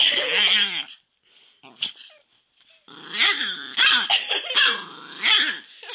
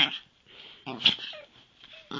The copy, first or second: second